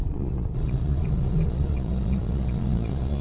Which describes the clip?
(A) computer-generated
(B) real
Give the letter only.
A